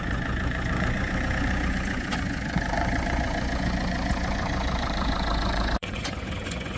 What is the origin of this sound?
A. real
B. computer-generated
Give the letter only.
B